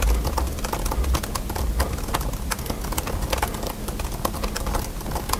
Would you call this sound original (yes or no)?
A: yes